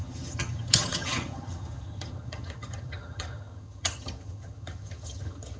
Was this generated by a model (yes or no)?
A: yes